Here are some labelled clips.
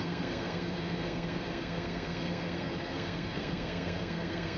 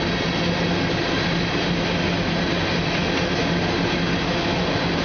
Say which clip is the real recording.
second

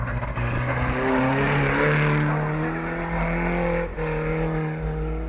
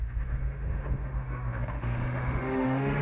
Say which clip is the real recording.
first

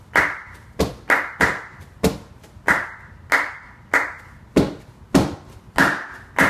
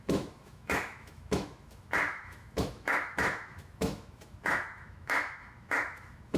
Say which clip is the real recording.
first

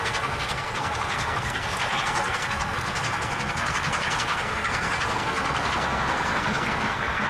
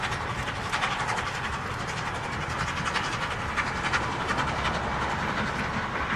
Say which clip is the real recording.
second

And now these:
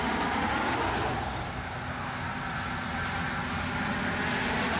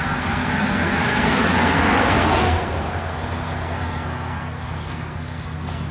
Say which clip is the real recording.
first